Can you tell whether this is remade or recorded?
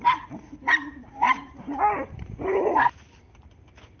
recorded